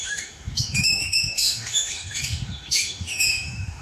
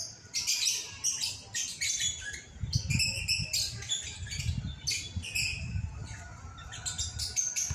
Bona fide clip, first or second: second